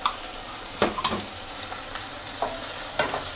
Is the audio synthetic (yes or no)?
yes